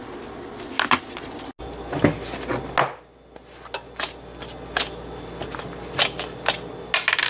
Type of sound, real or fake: real